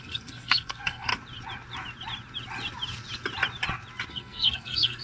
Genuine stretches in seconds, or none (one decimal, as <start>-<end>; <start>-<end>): 1.1-4.1